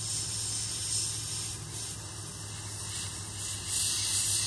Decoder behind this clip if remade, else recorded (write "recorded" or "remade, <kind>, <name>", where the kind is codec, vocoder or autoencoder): recorded